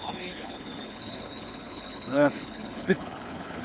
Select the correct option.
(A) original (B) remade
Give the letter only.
B